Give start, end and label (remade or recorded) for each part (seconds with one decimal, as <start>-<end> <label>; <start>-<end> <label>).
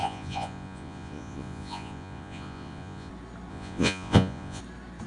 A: 0.0-3.1 remade; 3.1-3.5 recorded; 3.5-4.6 remade; 4.6-5.1 recorded